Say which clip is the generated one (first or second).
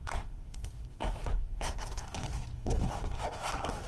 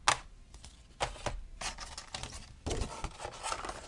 first